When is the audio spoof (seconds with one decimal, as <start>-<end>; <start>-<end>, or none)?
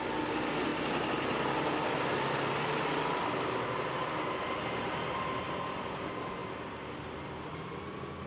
none